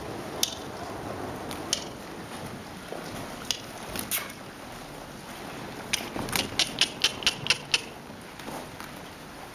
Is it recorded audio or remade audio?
recorded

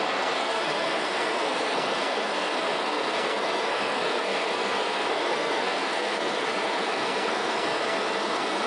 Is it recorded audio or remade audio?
remade